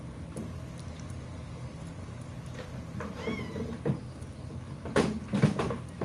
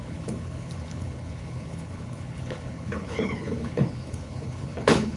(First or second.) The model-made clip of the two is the second